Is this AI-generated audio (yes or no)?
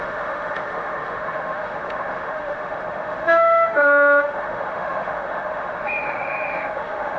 yes